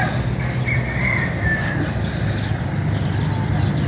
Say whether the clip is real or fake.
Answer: real